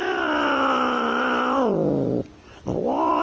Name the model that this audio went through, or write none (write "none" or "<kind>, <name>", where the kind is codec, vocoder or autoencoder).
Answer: none